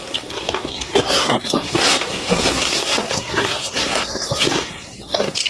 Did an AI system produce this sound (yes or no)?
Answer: yes